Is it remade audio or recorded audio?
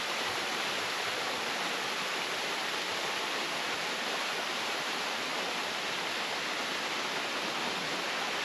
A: recorded